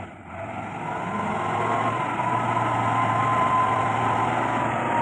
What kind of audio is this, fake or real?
real